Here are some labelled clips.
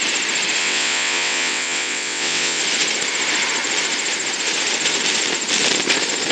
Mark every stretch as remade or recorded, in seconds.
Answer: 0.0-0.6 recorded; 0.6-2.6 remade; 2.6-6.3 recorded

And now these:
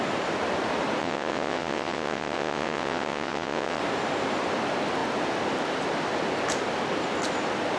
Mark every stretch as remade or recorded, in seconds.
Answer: 0.0-1.0 recorded; 1.0-3.8 remade; 3.8-7.8 recorded

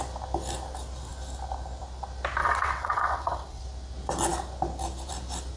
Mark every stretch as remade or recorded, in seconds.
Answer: 0.0-2.4 recorded; 2.4-3.6 remade; 3.6-5.6 recorded

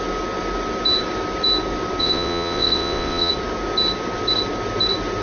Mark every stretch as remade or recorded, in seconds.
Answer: 0.0-2.0 recorded; 2.0-3.3 remade; 3.3-5.2 recorded

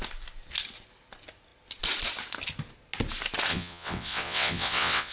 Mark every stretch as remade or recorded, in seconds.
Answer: 0.0-3.5 recorded; 3.5-5.1 remade

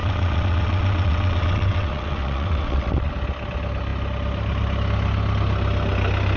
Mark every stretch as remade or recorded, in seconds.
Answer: 0.0-3.1 remade; 3.1-6.4 recorded

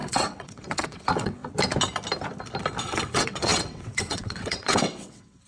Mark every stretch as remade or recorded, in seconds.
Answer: 0.0-1.4 remade; 1.4-2.8 recorded; 2.8-5.5 remade